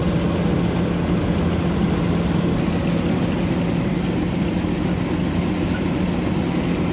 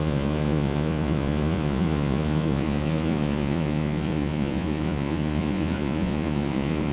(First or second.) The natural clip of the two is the first